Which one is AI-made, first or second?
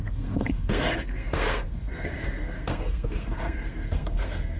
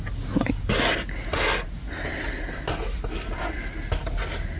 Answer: first